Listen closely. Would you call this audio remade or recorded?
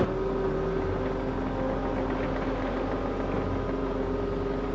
recorded